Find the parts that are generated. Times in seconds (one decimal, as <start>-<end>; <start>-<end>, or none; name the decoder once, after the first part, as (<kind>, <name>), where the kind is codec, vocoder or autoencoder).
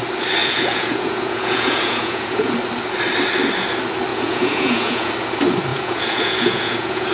0.4-2.5 (vocoder, Vocos); 4.1-5.1; 5.7-7.1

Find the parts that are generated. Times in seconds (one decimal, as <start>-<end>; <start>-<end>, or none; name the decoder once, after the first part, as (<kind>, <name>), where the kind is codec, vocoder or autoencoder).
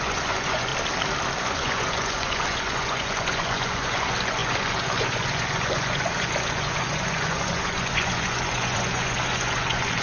0.0-0.7 (vocoder, Vocos); 1.4-10.0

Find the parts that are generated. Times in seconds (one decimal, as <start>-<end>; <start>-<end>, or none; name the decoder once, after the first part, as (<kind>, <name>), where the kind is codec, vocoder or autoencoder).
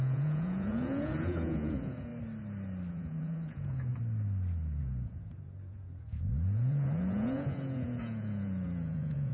0.0-2.1 (vocoder, Vocos); 2.9-3.9; 4.8-9.3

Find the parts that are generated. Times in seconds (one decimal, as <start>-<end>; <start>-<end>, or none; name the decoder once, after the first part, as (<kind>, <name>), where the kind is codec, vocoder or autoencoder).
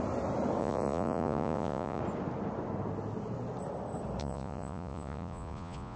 0.6-2.0 (vocoder, Vocos); 4.2-6.0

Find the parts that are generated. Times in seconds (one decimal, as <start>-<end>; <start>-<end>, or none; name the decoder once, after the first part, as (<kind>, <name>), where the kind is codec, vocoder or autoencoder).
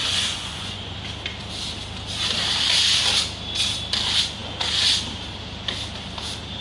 0.0-0.9 (vocoder, Vocos)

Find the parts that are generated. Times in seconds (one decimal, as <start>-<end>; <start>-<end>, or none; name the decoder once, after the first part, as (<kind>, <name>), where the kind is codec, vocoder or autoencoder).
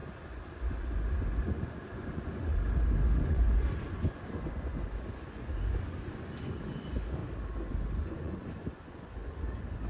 0.0-7.2 (vocoder, Vocos); 7.7-9.9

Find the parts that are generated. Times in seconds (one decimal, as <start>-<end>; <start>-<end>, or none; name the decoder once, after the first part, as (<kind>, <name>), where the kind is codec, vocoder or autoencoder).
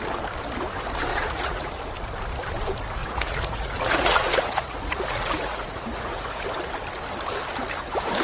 1.1-1.7 (vocoder, Vocos); 3.0-6.4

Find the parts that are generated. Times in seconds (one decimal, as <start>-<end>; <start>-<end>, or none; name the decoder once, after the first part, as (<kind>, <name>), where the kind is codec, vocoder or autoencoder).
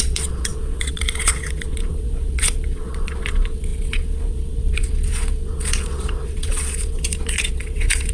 0.0-8.1 (vocoder, Vocos)